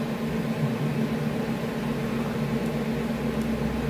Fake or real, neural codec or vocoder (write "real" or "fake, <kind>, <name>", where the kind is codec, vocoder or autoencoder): real